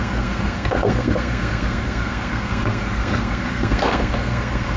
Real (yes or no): no